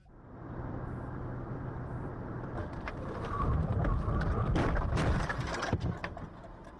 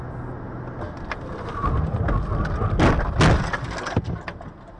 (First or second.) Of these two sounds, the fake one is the first